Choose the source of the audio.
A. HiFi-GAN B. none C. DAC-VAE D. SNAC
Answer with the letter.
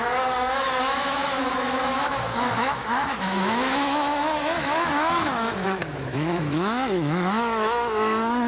C